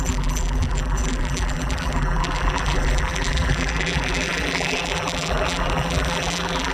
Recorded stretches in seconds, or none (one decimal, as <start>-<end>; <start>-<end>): none